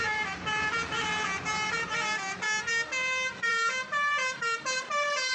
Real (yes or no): no